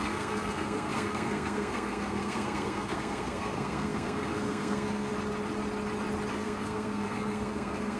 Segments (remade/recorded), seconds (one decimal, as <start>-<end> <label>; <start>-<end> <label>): 0.0-5.1 remade; 5.1-6.3 recorded; 6.3-8.0 remade